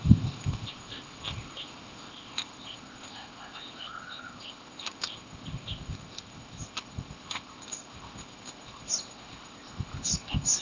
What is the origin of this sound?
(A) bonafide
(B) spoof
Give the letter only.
B